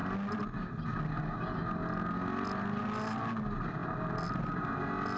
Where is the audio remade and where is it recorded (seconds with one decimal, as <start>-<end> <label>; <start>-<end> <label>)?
0.0-5.2 recorded